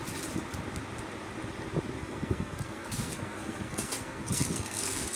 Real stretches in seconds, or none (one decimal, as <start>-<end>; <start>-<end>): 0.0-2.0